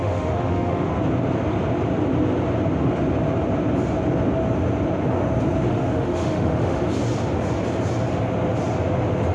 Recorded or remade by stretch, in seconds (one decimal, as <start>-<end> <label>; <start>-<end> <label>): 0.0-0.9 remade; 0.9-5.7 recorded; 5.7-6.8 remade; 6.8-9.3 recorded